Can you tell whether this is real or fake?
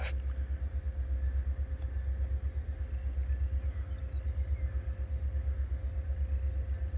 real